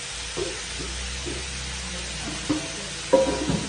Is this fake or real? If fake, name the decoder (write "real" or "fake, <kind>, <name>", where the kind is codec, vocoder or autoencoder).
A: real